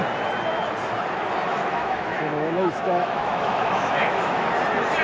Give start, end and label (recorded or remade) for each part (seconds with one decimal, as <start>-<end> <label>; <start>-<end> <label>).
0.0-1.5 recorded; 1.5-4.5 remade; 4.5-5.0 recorded